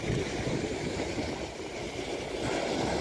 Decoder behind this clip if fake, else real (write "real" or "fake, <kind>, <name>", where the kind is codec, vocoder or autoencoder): real